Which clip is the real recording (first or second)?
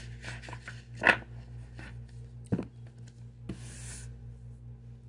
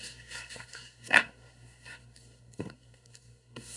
first